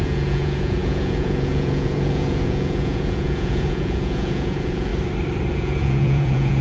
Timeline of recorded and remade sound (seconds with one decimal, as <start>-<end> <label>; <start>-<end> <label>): 0.0-4.9 remade; 4.9-5.5 recorded; 5.5-6.6 remade